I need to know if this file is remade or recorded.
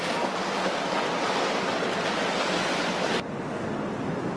recorded